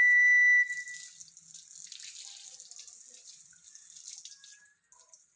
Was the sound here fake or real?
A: real